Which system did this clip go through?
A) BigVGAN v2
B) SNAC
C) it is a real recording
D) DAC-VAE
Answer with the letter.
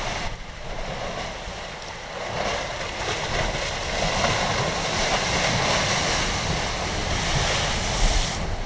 C